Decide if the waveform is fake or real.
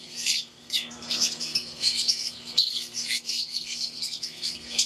fake